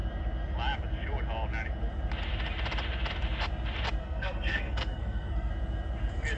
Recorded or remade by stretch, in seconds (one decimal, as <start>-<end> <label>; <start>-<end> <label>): 0.0-4.0 recorded; 4.0-5.5 remade; 5.5-6.4 recorded